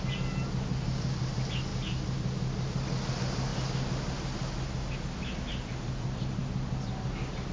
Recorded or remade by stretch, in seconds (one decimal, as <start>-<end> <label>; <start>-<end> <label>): 0.0-7.5 recorded